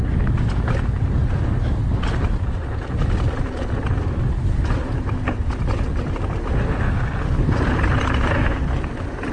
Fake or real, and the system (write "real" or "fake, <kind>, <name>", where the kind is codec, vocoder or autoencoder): real